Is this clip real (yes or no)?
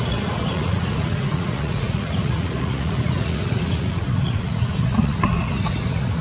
no